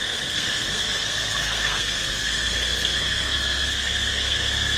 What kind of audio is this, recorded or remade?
remade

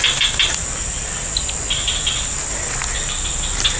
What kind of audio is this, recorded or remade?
recorded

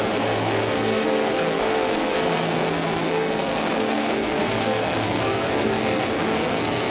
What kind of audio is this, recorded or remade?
remade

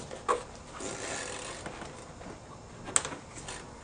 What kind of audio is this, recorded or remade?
recorded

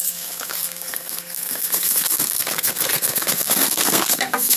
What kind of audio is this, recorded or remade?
remade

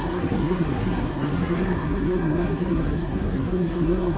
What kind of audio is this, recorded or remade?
remade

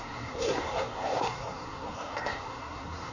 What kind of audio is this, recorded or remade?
remade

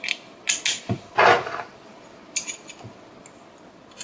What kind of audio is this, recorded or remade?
recorded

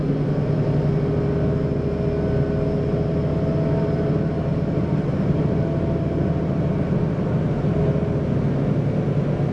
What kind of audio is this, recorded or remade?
recorded